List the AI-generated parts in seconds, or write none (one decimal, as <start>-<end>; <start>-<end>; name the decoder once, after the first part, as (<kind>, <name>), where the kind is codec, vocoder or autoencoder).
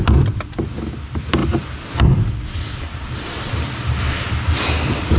none